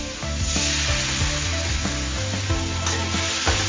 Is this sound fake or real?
real